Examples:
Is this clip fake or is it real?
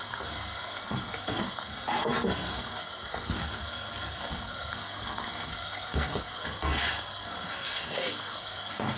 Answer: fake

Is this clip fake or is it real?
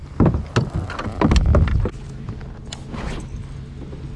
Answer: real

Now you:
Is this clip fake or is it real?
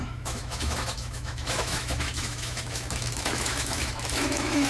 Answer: fake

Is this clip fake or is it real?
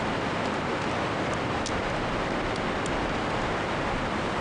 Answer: real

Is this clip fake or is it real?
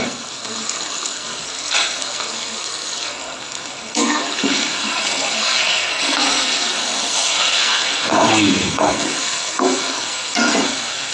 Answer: fake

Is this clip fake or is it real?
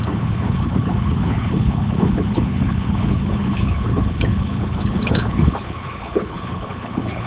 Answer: fake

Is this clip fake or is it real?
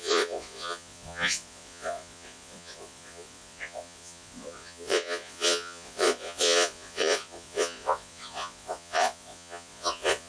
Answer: fake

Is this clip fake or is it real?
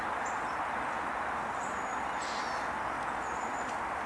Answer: real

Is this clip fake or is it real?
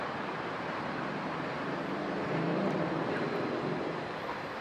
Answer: fake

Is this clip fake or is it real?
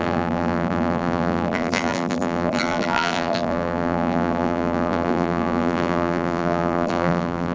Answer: fake